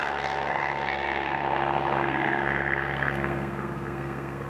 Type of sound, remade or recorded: remade